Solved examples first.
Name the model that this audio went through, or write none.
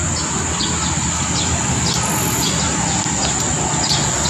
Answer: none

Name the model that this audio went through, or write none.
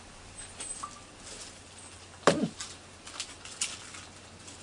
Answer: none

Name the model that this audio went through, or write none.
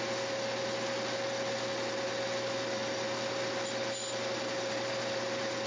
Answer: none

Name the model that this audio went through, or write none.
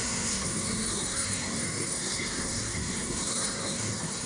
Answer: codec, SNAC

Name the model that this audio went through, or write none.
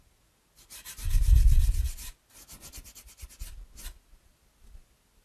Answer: none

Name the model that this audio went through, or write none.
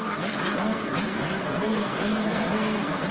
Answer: codec, SNAC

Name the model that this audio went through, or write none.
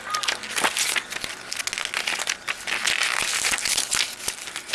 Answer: none